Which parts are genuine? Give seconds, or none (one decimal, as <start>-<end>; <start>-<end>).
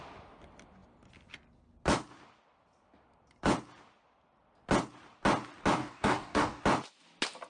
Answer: 0.0-5.8; 6.6-7.5